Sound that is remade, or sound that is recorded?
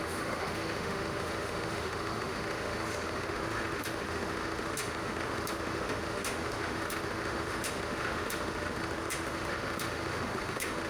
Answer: remade